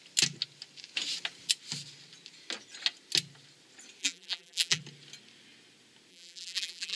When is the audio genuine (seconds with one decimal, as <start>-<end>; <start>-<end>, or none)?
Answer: 0.0-4.0; 4.8-6.1